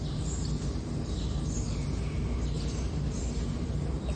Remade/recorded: remade